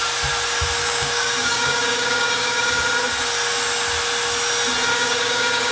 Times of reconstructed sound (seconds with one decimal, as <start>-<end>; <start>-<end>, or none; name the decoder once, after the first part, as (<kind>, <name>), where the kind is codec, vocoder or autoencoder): 0.8-2.8 (codec, DAC); 4.9-5.7